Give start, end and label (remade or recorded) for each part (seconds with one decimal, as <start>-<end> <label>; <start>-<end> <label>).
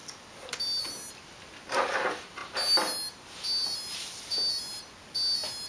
0.0-5.7 recorded